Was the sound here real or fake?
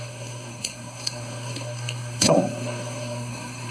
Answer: fake